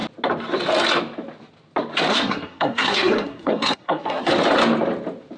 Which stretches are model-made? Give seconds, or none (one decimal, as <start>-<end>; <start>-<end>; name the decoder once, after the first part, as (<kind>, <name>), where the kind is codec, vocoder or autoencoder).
2.1-4.3 (codec, SNAC)